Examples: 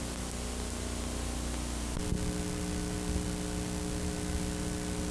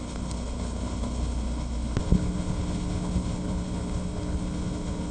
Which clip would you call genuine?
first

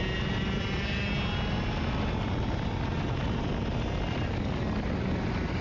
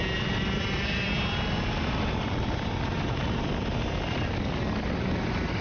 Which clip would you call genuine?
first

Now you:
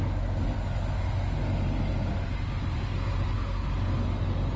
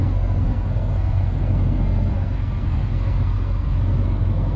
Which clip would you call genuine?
first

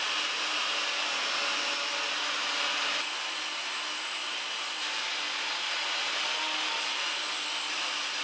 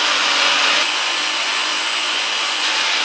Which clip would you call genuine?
first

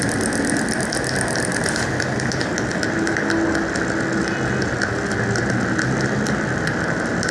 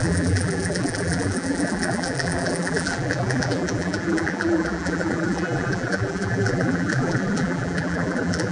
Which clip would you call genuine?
first